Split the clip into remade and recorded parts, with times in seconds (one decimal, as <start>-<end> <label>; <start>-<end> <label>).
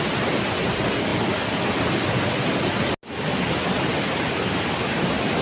0.0-5.4 recorded